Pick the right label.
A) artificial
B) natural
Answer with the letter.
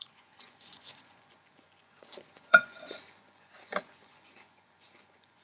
A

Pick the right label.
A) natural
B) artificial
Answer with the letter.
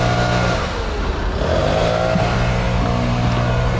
A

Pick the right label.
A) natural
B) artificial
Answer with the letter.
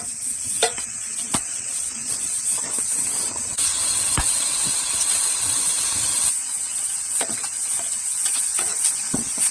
B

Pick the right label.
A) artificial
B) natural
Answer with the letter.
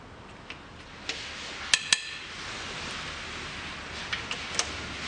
B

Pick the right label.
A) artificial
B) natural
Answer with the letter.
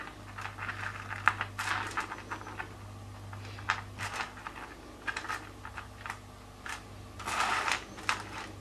B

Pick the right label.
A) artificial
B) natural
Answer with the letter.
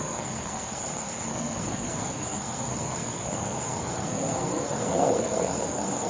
A